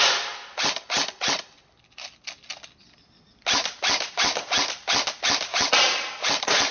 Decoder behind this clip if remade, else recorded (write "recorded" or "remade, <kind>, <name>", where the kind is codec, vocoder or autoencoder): recorded